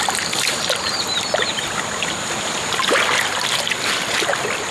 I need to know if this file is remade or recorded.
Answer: recorded